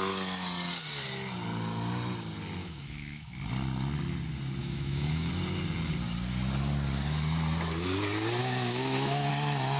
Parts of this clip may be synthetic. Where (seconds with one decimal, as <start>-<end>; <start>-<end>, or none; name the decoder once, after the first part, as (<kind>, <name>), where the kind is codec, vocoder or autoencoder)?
2.6-3.3 (autoencoder, DAC-VAE); 4.6-5.3; 8.4-9.3